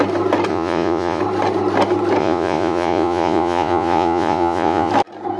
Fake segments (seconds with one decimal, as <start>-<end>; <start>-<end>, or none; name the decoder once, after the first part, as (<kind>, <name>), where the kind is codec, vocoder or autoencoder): 0.5-1.2 (vocoder, Vocos); 2.2-4.9